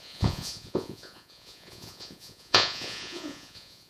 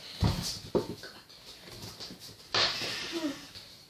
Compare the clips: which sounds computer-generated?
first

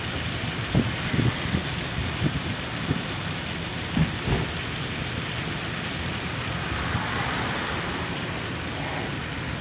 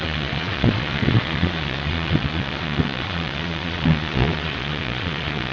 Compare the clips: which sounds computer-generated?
second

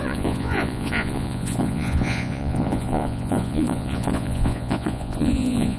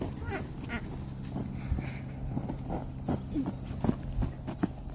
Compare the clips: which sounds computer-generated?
first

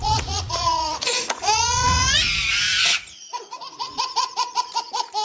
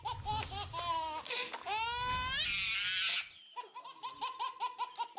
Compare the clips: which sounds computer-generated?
first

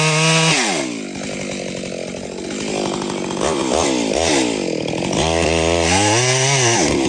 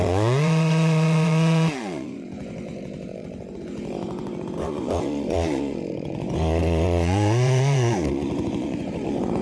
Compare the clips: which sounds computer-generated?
second